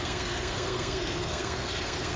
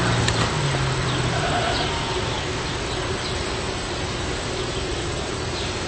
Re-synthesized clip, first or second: first